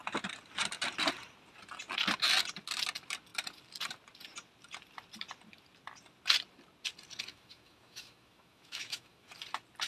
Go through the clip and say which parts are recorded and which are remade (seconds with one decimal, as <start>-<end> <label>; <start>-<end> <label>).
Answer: 0.0-7.3 recorded; 7.3-9.3 remade; 9.3-9.9 recorded